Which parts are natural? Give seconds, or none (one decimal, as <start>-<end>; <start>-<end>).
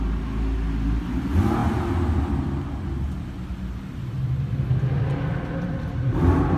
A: 0.0-6.6